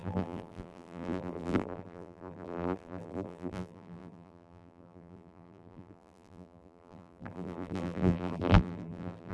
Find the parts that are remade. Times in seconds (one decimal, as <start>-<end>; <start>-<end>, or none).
0.0-9.3